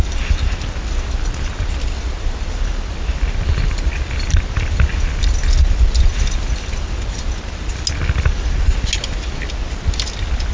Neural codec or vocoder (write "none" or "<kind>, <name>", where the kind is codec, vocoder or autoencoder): none